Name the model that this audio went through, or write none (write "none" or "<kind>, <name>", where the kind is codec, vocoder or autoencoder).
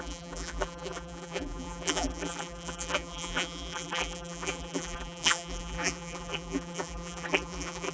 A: vocoder, BigVGAN v2